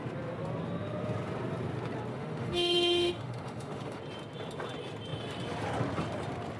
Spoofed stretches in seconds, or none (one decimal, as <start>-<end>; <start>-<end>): 2.1-4.0